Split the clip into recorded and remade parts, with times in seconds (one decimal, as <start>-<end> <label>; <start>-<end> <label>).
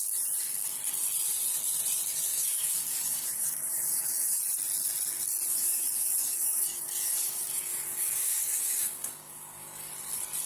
0.0-2.3 recorded; 2.3-4.4 remade; 4.4-5.5 recorded; 5.5-9.9 remade; 9.9-10.5 recorded